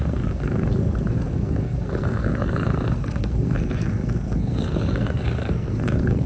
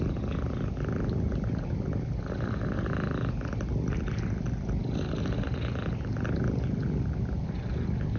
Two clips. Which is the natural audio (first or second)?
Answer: second